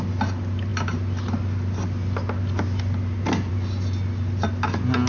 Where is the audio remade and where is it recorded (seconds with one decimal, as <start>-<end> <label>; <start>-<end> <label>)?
0.0-5.1 recorded